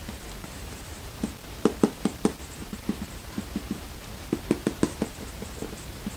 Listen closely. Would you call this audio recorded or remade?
remade